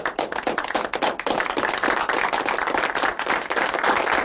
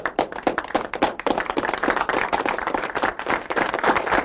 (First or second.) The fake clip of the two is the second